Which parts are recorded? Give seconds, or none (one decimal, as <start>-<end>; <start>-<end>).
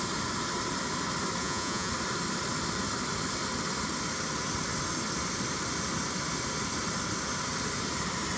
0.0-1.4; 1.9-8.4